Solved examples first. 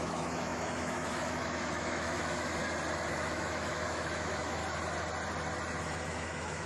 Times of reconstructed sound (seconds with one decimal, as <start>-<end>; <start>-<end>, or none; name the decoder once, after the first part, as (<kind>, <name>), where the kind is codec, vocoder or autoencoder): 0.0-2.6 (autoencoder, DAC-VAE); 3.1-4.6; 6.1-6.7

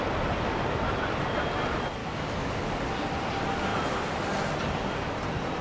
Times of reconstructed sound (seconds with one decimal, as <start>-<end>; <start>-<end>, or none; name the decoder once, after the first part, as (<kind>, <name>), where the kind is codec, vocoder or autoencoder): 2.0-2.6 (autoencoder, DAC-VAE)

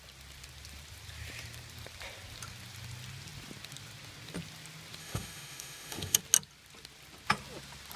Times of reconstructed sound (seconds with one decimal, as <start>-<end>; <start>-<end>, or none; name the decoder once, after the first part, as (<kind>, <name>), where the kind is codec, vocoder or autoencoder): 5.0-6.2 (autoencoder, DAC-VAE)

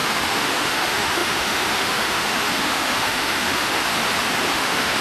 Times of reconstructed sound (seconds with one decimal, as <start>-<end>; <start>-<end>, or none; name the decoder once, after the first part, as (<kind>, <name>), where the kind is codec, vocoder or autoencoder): 0.0-4.0 (autoencoder, DAC-VAE); 4.5-5.0

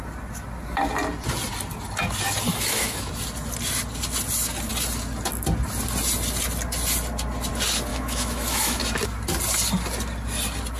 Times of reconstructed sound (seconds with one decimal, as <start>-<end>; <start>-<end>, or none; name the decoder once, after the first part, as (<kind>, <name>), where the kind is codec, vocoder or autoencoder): 2.5-3.1 (autoencoder, DAC-VAE); 7.9-8.8